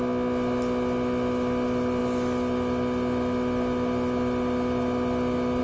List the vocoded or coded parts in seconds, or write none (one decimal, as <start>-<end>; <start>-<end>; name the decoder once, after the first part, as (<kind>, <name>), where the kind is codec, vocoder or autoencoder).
none